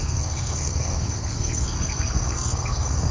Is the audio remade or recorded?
remade